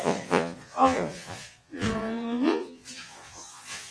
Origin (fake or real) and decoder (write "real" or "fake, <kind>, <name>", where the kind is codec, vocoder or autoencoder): fake, vocoder, Vocos